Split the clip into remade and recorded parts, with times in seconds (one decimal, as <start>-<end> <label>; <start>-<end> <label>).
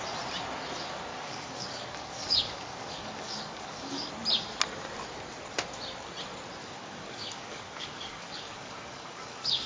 0.0-1.1 recorded; 1.1-4.1 remade; 4.1-6.6 recorded; 6.6-9.7 remade